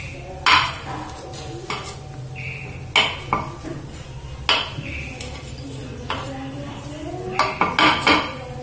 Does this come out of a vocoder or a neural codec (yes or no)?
no